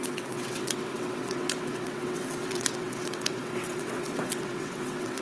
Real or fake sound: fake